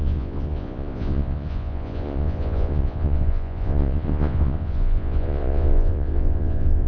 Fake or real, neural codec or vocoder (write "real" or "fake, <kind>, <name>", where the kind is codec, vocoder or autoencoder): fake, vocoder, Vocos